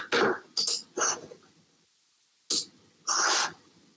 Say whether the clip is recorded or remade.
recorded